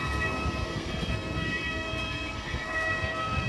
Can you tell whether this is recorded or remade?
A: remade